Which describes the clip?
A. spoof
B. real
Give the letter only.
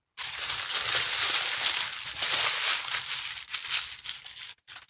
B